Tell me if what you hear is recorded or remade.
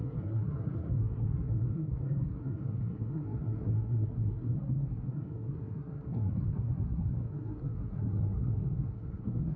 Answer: remade